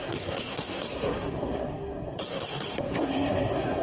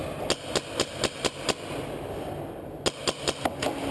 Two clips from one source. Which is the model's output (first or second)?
first